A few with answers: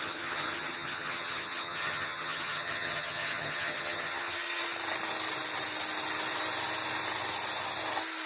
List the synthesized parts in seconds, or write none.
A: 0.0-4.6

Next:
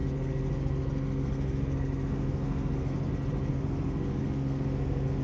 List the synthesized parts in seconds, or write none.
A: 0.0-3.1; 3.5-5.2

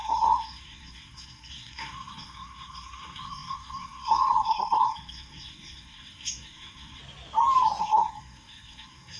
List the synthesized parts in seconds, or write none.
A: 0.0-7.0; 7.8-9.2

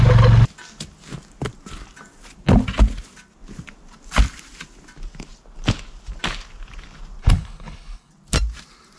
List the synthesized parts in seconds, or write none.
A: 7.2-8.1